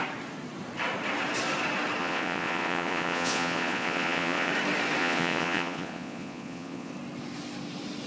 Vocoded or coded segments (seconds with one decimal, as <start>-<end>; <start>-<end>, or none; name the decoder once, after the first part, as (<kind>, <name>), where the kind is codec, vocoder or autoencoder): 2.0-4.5 (vocoder, Vocos); 5.0-6.9